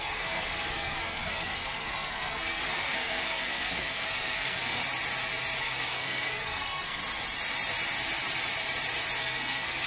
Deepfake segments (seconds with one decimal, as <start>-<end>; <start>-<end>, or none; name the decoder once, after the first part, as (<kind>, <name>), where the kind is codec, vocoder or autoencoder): 0.0-4.8 (codec, SNAC); 5.6-7.0; 9.2-9.9